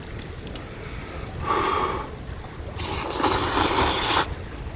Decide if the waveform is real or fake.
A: real